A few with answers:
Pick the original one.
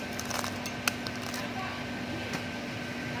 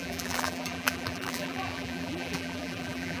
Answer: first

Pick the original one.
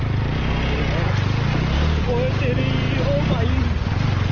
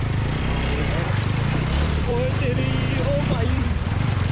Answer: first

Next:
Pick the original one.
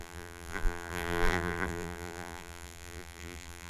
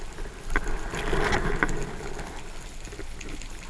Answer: second